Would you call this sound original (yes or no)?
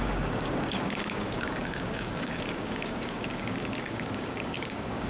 no